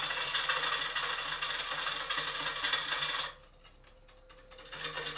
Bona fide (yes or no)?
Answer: yes